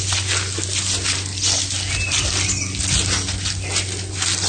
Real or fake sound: real